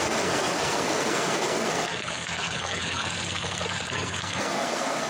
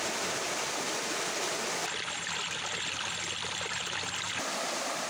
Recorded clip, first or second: second